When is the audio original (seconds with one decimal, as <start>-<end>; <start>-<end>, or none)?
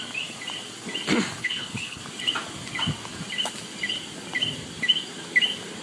0.0-1.4; 2.0-5.8